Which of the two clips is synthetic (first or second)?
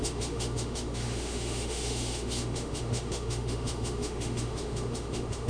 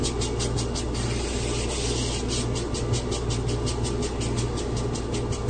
first